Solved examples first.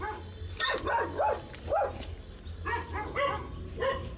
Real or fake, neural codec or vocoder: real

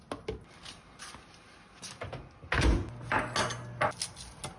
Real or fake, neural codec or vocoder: real